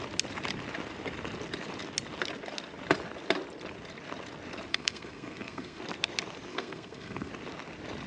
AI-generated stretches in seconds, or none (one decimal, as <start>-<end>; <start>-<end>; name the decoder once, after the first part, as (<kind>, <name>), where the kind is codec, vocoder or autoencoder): 4.7-5.8 (codec, SNAC); 6.5-7.3